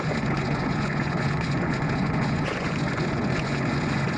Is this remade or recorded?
remade